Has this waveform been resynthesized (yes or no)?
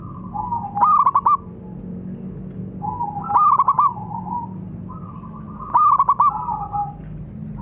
no